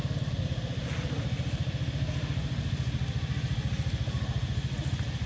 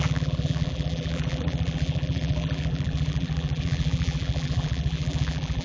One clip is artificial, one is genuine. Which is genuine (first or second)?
first